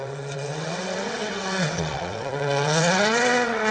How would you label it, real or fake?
fake